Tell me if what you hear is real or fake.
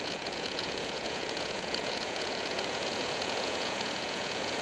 fake